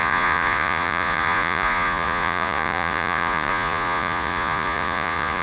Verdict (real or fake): fake